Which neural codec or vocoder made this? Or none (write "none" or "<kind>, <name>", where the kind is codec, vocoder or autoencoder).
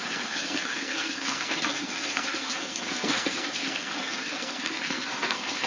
codec, SNAC